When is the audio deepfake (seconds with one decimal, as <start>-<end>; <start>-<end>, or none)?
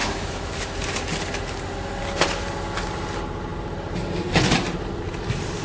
0.0-0.8